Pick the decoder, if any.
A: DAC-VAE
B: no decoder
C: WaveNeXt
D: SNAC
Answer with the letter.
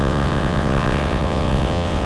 C